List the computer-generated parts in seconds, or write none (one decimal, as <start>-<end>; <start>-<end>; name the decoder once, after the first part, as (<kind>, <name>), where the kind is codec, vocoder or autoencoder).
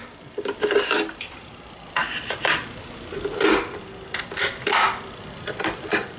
0.0-1.6 (vocoder, BigVGAN v2)